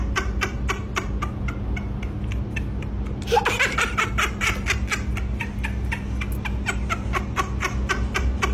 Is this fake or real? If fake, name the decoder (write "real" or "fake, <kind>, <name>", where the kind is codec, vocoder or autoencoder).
real